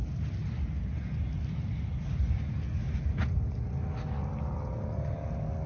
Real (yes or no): yes